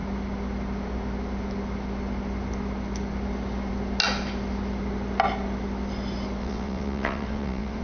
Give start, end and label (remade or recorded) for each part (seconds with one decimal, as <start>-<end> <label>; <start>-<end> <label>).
0.0-6.4 recorded; 6.4-7.8 remade